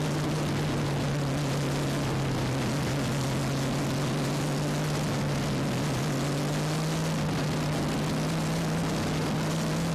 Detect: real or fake real